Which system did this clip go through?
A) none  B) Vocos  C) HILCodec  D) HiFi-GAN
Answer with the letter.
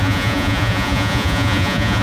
B